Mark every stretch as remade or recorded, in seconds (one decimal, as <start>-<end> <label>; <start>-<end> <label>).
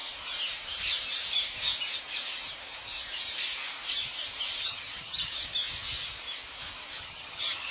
0.0-4.6 recorded; 4.6-5.3 remade; 5.3-7.0 recorded; 7.0-7.7 remade